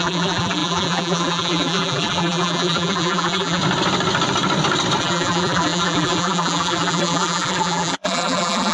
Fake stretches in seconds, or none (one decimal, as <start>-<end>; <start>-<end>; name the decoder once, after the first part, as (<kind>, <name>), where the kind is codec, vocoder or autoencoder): 0.0-3.6 (vocoder, BigVGAN v2); 5.0-8.7